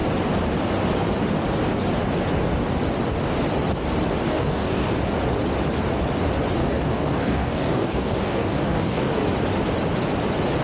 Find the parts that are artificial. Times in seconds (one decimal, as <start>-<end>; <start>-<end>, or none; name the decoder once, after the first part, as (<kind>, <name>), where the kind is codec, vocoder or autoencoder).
4.3-4.9 (codec, DAC); 6.6-9.1